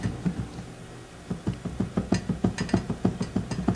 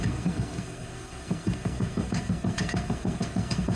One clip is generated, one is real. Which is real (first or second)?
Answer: first